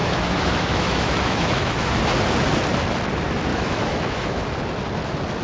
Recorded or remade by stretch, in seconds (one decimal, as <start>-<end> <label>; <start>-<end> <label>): 0.0-1.9 remade; 1.9-3.5 recorded; 3.5-4.4 remade; 4.4-5.4 recorded